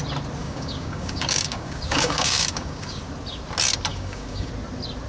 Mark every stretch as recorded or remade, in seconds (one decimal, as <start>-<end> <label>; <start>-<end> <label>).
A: 0.0-0.4 recorded; 0.4-3.0 remade; 3.0-3.9 recorded; 3.9-4.5 remade; 4.5-5.1 recorded